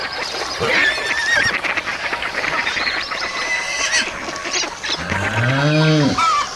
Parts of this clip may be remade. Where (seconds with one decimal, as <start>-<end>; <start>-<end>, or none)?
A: 1.9-3.4